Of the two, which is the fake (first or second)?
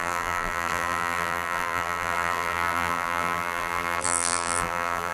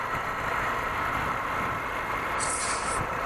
first